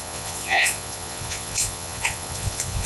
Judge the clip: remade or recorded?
remade